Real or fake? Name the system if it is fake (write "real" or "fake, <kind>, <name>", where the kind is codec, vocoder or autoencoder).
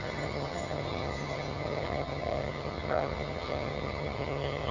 fake, vocoder, HiFi-GAN